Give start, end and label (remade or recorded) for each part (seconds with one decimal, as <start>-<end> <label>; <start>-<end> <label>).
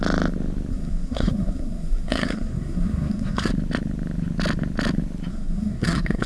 0.0-0.7 recorded; 0.7-3.5 remade; 3.5-5.3 recorded; 5.3-6.3 remade